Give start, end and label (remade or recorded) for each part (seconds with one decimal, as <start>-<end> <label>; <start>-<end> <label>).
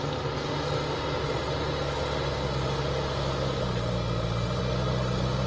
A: 0.0-5.5 recorded